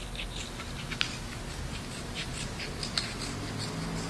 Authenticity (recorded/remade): recorded